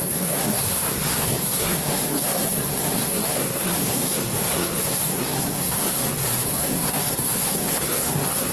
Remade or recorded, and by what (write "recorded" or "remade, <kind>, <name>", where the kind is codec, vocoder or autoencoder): remade, codec, SNAC